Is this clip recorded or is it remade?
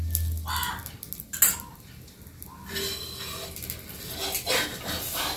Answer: recorded